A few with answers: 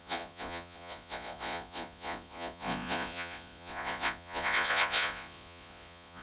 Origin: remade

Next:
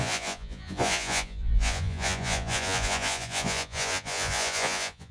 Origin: remade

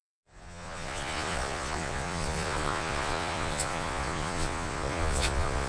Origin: remade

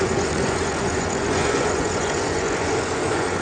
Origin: remade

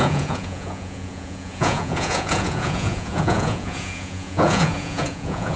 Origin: remade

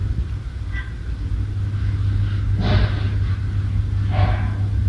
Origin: recorded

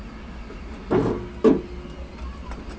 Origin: recorded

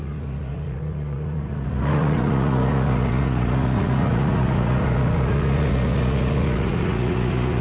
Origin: remade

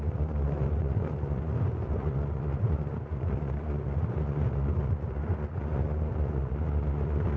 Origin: remade